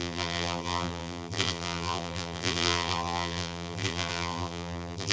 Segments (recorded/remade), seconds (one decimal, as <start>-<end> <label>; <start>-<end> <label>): 0.0-5.1 remade

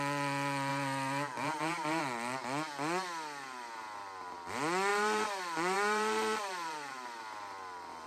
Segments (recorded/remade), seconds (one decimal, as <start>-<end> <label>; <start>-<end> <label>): 0.0-0.7 recorded; 0.7-2.0 remade; 2.0-4.9 recorded; 4.9-6.9 remade; 6.9-8.1 recorded

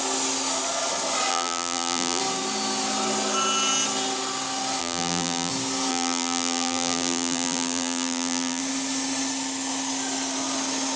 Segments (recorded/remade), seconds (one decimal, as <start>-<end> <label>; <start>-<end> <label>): 0.0-1.3 recorded; 1.3-2.2 remade; 2.2-4.8 recorded; 4.8-5.5 remade; 5.5-5.9 recorded; 5.9-8.6 remade; 8.6-11.0 recorded

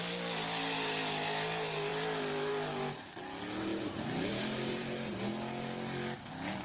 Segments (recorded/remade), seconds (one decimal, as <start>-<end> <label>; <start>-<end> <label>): 0.0-3.7 recorded; 3.7-4.9 remade; 4.9-6.6 recorded

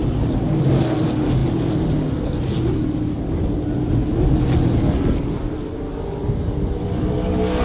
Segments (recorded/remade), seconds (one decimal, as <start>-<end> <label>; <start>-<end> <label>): 0.0-0.7 remade; 0.7-7.6 recorded

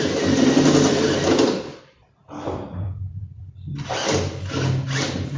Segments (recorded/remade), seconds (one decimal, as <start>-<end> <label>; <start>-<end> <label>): 0.0-1.7 recorded; 1.7-3.7 remade; 3.7-5.4 recorded

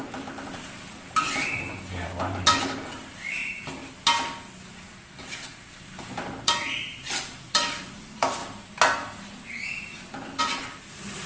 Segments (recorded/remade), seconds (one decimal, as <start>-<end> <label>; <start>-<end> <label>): 0.0-1.5 remade; 1.5-2.9 recorded; 2.9-3.4 remade; 3.4-5.8 recorded; 5.8-8.4 remade; 8.4-10.4 recorded; 10.4-11.3 remade